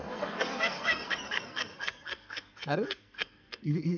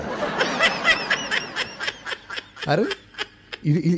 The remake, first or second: first